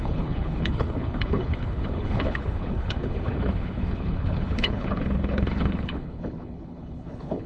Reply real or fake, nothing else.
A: fake